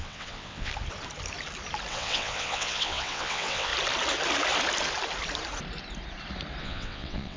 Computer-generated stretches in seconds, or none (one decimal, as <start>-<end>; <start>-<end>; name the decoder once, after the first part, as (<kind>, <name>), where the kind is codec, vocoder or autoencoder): 0.0-0.7 (vocoder, WaveNeXt); 1.9-3.7; 6.6-7.4